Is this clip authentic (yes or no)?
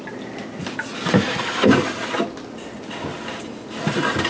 yes